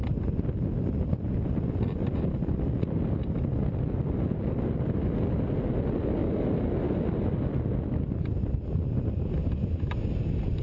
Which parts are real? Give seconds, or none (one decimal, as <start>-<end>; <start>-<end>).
0.0-10.6

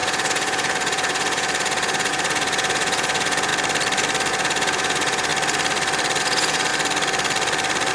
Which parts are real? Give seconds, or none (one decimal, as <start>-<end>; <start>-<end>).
3.5-4.3; 5.3-6.2; 6.7-7.9

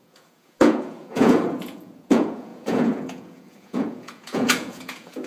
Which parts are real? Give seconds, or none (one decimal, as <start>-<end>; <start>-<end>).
none

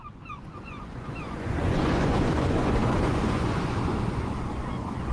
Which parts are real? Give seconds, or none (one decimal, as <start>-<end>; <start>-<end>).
none

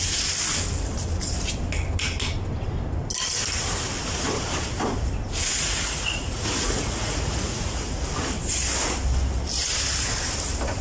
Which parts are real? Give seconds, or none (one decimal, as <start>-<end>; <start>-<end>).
0.0-5.5; 8.0-10.8

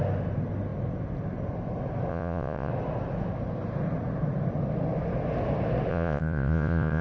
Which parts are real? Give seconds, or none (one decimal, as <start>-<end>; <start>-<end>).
0.0-2.1; 2.7-5.9

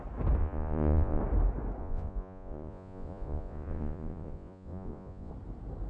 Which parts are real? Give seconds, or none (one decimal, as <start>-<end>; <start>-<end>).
0.0-0.4; 1.2-1.8; 5.3-5.9